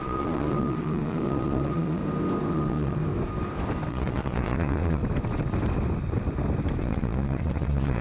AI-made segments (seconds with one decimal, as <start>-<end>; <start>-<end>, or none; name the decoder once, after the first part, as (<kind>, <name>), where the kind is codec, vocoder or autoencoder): 0.0-2.0 (vocoder, Vocos); 2.5-3.0; 3.9-5.0; 6.8-8.0